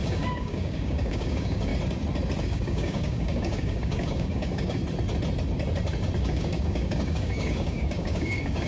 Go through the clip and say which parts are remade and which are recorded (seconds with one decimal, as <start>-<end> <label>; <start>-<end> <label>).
0.0-1.7 remade; 1.7-2.4 recorded; 2.4-4.8 remade; 4.8-6.2 recorded; 6.2-8.7 remade